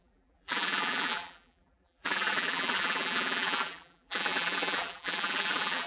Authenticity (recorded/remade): remade